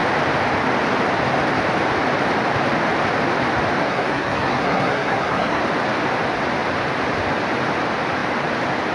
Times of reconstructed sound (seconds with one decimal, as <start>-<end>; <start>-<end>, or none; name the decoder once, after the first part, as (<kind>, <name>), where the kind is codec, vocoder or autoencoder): 3.8-5.6 (codec, SNAC)